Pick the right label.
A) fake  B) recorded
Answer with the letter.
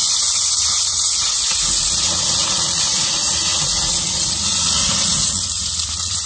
A